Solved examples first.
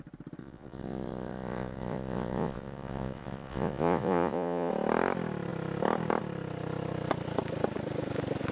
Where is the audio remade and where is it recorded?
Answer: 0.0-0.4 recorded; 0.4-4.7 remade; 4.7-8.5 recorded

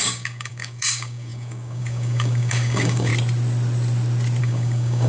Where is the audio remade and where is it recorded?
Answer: 0.0-3.1 remade; 3.1-4.4 recorded; 4.4-5.1 remade

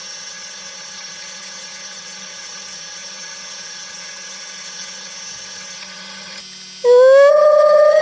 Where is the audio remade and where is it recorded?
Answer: 0.0-6.4 remade; 6.4-7.3 recorded; 7.3-8.0 remade

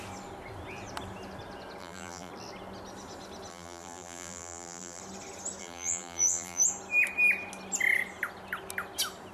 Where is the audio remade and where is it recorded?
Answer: 0.0-1.8 recorded; 1.8-2.3 remade; 2.3-3.5 recorded; 3.5-5.0 remade; 5.0-5.6 recorded; 5.6-6.6 remade; 6.6-9.3 recorded